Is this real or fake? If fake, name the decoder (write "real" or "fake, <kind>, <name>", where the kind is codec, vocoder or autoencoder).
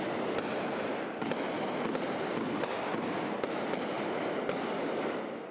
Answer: real